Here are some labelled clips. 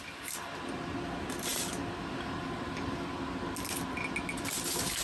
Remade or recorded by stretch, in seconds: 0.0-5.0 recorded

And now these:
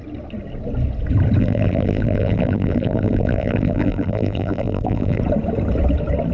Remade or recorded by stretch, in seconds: 0.0-1.4 recorded; 1.4-5.2 remade; 5.2-6.3 recorded

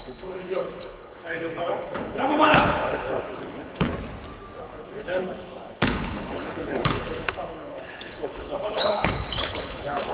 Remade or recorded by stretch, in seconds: 0.0-3.9 remade; 3.9-4.6 recorded; 4.6-10.1 remade